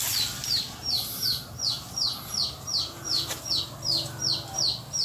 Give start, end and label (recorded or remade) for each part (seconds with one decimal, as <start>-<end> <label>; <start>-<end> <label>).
0.0-0.4 recorded; 0.4-3.4 remade; 3.4-5.0 recorded

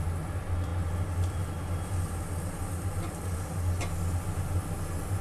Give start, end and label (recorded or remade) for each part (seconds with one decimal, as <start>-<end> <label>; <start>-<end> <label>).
0.0-5.2 recorded

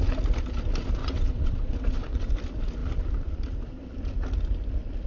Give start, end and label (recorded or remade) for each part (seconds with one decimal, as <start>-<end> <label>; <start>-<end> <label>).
0.0-1.0 recorded; 1.0-2.3 remade; 2.3-5.1 recorded

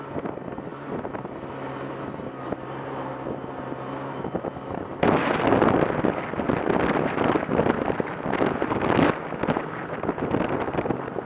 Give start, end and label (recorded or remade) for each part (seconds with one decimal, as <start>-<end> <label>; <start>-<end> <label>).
0.0-11.2 recorded

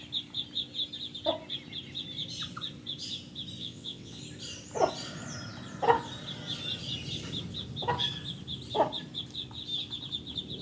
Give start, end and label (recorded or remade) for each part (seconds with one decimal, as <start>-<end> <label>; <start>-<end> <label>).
0.0-3.6 recorded; 3.6-4.2 remade; 4.2-10.6 recorded

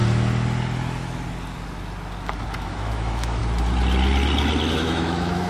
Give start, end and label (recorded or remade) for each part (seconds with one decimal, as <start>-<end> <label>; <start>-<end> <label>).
0.0-2.5 recorded; 2.5-3.4 remade; 3.4-4.7 recorded; 4.7-5.5 remade

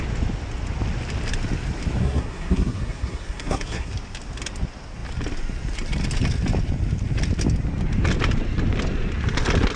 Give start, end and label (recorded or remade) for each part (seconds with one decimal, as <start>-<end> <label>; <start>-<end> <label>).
0.0-2.0 recorded; 2.0-3.9 remade; 3.9-9.8 recorded